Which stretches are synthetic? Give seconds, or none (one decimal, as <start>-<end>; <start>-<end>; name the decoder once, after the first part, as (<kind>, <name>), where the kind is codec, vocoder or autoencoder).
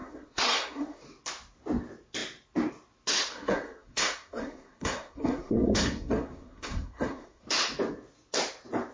0.0-1.0 (codec, SNAC); 3.3-7.4